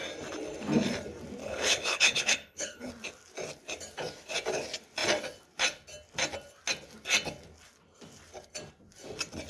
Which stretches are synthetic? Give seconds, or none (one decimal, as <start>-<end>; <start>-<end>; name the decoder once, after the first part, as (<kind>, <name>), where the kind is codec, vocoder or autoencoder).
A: 1.4-2.9 (codec, HILCodec)